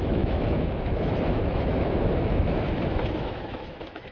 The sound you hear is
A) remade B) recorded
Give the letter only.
A